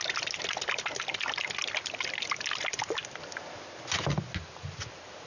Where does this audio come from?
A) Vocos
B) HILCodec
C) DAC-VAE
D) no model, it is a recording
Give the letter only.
D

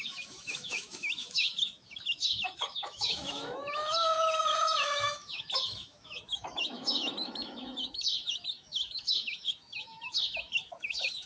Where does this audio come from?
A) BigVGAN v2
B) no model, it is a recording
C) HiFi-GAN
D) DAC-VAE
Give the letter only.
D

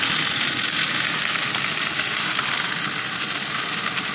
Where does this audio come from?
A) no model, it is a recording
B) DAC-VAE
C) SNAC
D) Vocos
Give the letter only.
A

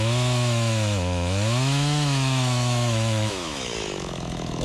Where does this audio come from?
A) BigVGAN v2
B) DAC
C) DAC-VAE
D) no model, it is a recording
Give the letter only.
C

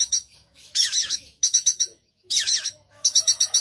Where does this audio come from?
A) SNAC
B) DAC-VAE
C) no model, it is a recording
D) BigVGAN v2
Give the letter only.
B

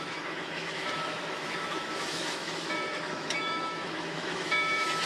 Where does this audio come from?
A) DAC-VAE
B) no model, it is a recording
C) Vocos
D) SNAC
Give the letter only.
A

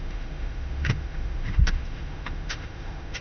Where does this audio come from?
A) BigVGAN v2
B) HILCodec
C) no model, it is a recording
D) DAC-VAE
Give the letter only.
D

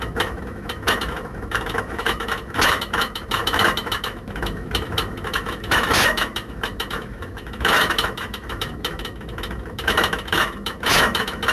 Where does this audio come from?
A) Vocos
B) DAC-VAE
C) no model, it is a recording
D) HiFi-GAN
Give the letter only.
B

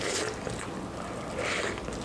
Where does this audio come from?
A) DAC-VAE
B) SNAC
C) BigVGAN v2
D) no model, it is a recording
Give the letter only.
D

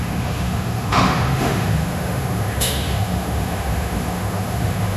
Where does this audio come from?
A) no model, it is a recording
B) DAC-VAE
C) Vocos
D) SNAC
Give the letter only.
B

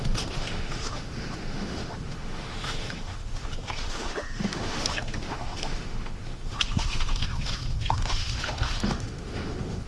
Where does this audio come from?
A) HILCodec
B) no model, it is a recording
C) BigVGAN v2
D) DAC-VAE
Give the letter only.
D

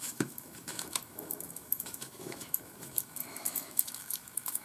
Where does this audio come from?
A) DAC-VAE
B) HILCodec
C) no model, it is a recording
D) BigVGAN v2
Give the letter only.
A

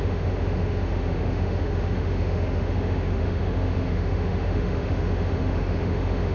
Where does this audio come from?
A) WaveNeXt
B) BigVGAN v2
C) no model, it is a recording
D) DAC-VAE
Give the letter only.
D